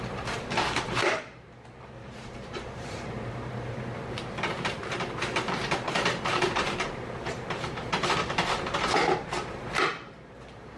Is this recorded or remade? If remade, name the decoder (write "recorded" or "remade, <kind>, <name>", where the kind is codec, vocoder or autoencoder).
remade, vocoder, BigVGAN v2